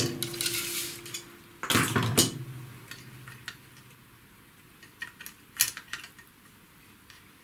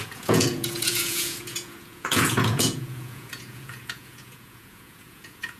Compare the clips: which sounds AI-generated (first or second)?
second